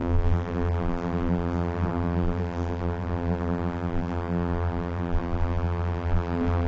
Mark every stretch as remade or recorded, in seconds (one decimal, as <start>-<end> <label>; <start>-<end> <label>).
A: 0.0-6.7 remade